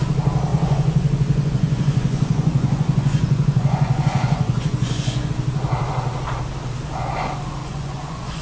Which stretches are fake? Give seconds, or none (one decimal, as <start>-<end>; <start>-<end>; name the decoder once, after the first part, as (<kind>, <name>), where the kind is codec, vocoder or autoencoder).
0.5-5.3 (vocoder, Vocos); 7.6-8.4